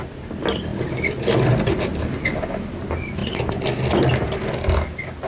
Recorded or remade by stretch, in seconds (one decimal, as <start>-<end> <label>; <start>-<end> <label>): 0.0-5.3 recorded